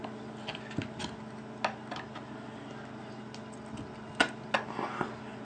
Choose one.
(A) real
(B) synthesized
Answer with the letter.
A